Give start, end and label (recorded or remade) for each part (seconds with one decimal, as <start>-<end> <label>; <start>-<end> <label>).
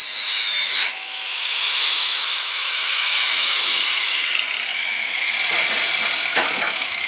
0.0-4.3 remade; 4.3-4.7 recorded; 4.7-5.3 remade; 5.3-6.3 recorded; 6.3-7.1 remade